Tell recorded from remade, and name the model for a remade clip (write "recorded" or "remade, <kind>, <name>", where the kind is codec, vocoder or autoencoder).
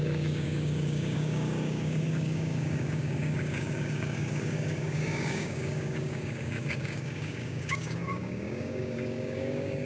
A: remade, codec, DAC